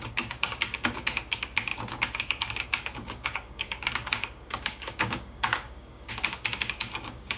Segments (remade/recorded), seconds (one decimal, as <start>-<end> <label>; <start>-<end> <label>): 0.0-7.4 remade